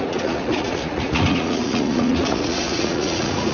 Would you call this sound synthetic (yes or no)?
yes